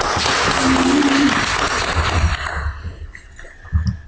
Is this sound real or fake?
real